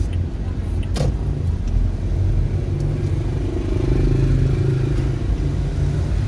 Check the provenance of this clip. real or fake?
real